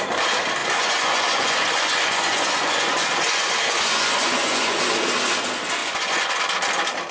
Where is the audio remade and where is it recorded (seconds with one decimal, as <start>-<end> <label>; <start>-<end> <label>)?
0.0-0.6 recorded; 0.6-4.9 remade; 4.9-5.8 recorded; 5.8-6.4 remade; 6.4-7.1 recorded